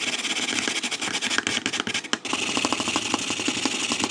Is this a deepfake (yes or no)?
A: no